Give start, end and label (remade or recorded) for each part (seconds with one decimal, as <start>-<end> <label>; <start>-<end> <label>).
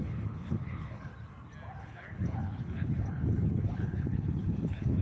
0.0-1.1 remade; 1.1-1.8 recorded; 1.8-5.0 remade